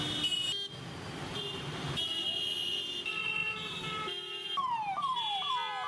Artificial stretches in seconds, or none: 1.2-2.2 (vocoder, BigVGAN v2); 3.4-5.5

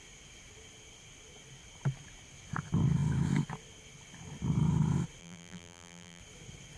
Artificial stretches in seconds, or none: 5.2-6.2 (vocoder, BigVGAN v2)

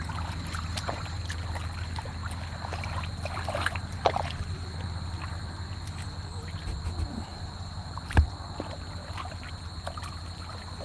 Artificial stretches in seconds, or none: 7.3-8.2 (vocoder, BigVGAN v2)

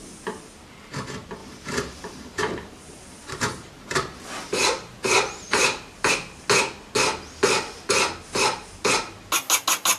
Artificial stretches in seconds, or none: 1.4-6.1 (vocoder, BigVGAN v2)